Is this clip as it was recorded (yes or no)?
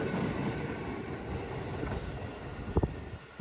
yes